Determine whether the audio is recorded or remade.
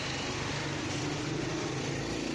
recorded